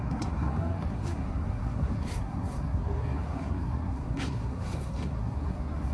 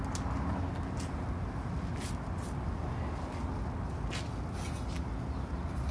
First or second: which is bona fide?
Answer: second